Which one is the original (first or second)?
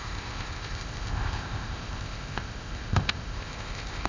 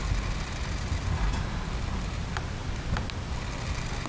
second